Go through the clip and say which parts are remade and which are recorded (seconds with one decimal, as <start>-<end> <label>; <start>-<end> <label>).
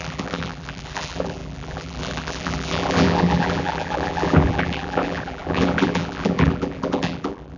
0.0-7.6 remade